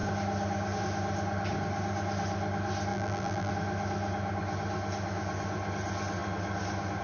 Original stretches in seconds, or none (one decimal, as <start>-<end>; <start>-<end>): 0.0-2.9; 3.5-7.0

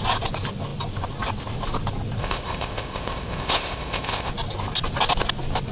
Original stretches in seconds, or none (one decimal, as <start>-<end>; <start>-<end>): 0.0-2.2; 4.3-5.7